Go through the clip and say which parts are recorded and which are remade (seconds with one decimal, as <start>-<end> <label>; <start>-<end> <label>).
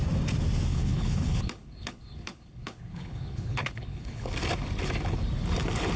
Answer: 0.0-0.7 recorded; 0.7-4.3 remade; 4.3-6.0 recorded